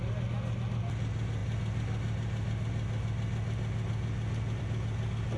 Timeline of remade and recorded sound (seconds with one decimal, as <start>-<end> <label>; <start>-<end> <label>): 0.0-5.4 recorded